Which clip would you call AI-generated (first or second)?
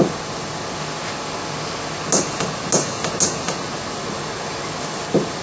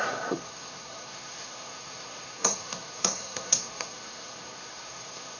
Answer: second